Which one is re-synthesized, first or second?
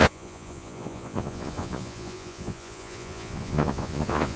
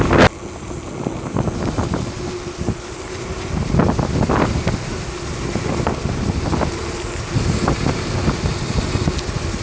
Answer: first